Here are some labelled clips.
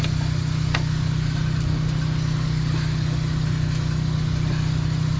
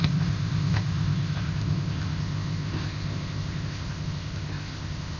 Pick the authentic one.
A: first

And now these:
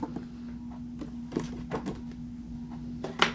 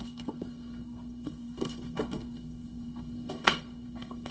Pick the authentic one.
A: first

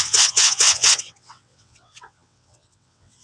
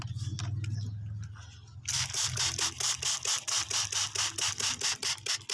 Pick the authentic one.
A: second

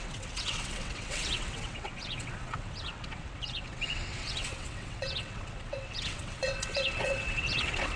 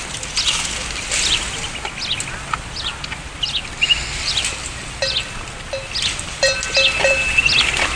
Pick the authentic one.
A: second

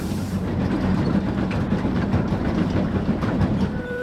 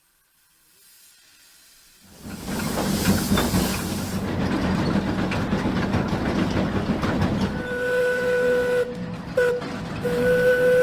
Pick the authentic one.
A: second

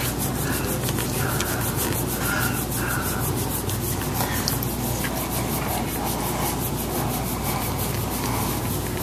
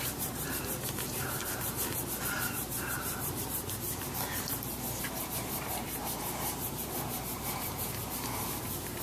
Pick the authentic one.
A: first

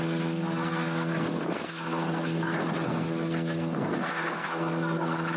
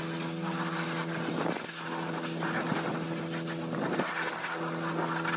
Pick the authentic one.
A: second